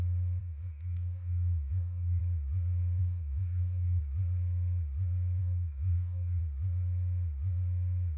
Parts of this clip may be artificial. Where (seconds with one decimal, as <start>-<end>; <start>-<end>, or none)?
0.4-2.2; 3.0-4.0; 5.4-6.4